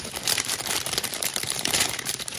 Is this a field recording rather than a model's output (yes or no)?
no